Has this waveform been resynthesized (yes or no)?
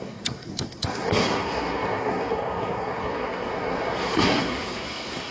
yes